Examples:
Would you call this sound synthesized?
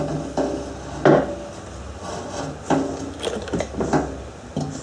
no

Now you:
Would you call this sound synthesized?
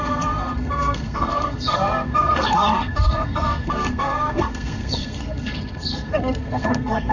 yes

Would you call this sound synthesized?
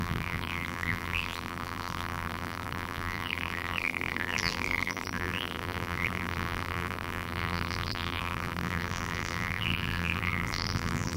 yes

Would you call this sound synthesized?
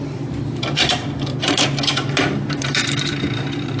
yes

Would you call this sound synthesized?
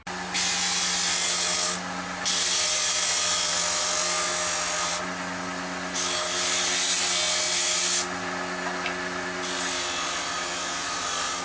no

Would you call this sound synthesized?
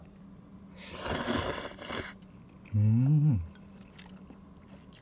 no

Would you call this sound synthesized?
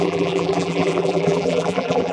yes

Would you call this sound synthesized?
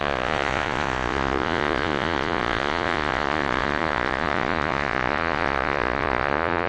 yes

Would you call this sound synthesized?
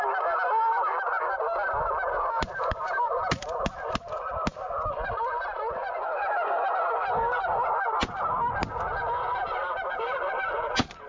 no